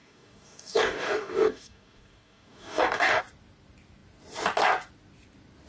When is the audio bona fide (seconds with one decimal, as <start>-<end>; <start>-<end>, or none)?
3.2-5.7